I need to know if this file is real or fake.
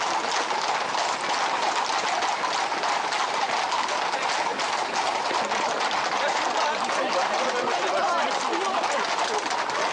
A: real